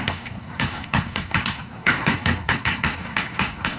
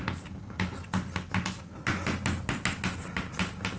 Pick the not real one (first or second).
first